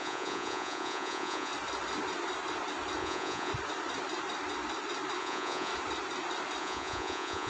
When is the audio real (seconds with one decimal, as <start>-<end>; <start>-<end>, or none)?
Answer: 1.5-3.0; 3.5-5.2; 5.7-6.6